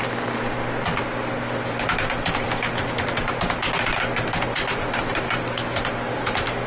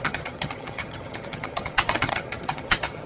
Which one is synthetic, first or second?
second